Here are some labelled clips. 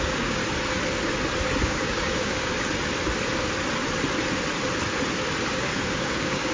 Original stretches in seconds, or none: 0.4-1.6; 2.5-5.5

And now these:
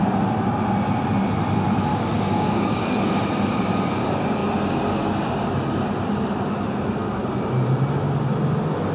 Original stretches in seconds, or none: 0.0-1.9; 3.3-8.9

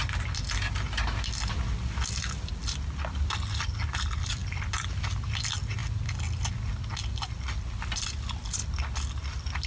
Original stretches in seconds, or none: 0.0-9.7

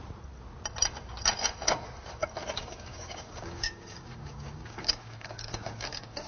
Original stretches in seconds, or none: 0.0-2.4

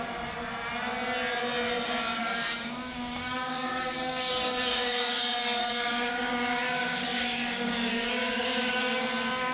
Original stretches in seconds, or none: 0.0-2.2; 4.3-4.7; 9.0-9.5

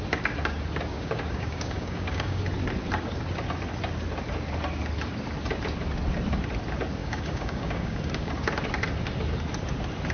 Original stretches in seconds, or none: 0.0-0.9; 2.4-7.0; 8.3-10.1

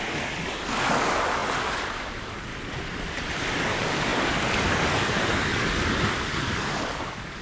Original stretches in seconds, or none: 2.5-3.4

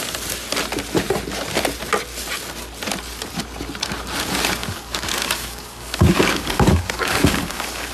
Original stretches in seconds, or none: 0.0-4.6